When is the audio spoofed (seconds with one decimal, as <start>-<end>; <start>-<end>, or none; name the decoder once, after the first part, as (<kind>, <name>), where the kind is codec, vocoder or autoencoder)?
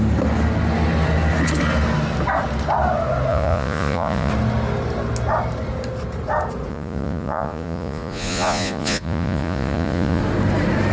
3.3-4.3 (vocoder, Vocos); 6.7-10.2